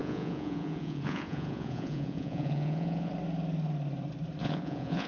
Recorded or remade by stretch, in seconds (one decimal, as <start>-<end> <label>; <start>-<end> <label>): 0.0-3.1 remade; 3.1-4.4 recorded; 4.4-5.1 remade